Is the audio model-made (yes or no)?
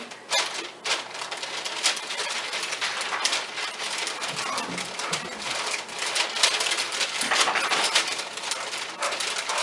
no